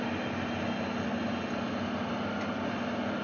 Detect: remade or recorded recorded